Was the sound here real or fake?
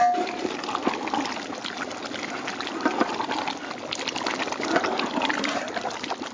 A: real